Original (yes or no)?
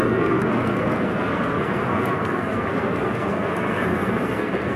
no